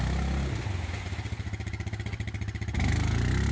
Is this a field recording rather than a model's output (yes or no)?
yes